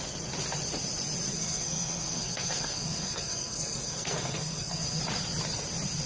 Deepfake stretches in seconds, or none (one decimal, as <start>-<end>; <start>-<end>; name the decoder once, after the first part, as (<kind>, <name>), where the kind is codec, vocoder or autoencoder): 1.3-5.0 (codec, SNAC)